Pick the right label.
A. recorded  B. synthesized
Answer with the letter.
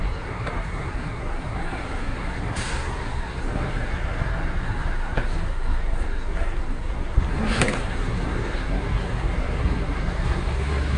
B